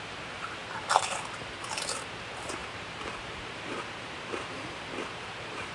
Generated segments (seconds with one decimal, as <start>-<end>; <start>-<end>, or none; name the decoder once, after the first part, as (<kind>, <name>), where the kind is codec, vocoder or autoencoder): 0.0-5.7 (vocoder, BigVGAN v2)